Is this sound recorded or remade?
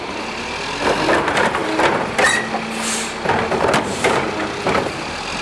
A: recorded